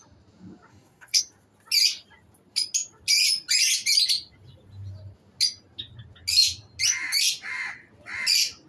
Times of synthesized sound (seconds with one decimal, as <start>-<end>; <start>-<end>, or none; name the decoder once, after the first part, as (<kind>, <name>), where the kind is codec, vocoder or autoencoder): 0.7-1.2 (codec, SNAC)